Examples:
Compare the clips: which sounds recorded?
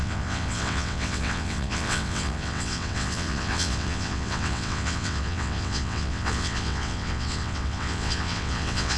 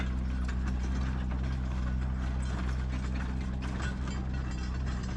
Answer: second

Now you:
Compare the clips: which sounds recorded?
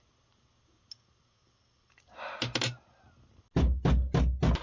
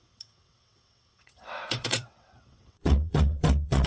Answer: first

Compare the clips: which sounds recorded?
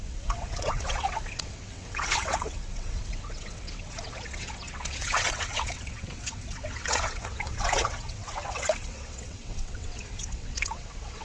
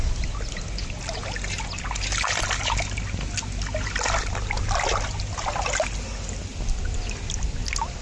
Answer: second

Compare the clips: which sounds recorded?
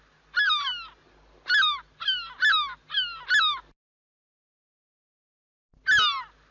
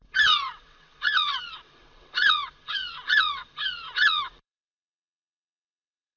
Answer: first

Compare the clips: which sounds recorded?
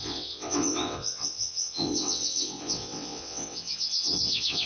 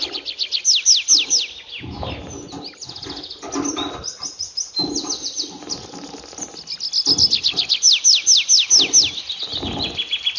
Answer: second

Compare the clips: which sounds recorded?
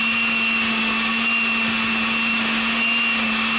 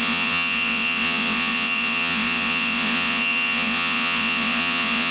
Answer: first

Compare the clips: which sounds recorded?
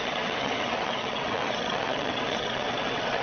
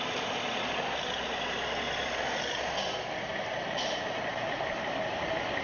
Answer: second